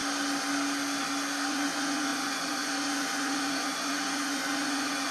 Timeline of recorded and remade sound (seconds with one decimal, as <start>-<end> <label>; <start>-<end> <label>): 0.0-1.5 recorded; 1.5-5.1 remade